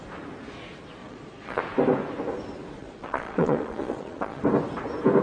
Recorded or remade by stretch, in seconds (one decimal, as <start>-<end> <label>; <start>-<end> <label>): 0.0-1.0 recorded; 1.0-1.6 remade; 1.6-2.8 recorded; 2.8-4.4 remade; 4.4-5.2 recorded